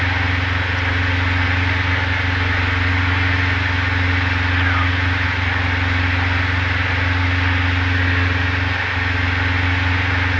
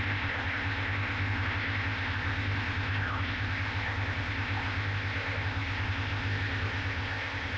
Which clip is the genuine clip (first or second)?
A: first